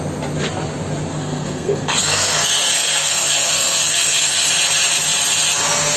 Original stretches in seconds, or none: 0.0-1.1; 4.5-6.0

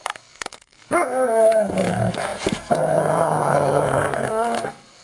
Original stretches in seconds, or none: none